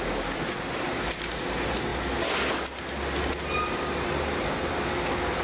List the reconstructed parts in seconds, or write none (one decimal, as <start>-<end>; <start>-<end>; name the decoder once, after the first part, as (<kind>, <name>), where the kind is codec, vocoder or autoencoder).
none